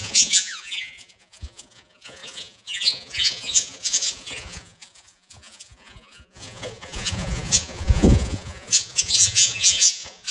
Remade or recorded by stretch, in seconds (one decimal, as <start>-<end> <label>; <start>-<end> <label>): 0.0-10.3 remade